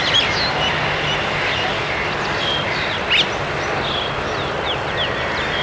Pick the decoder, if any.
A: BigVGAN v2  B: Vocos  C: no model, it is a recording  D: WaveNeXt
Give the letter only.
C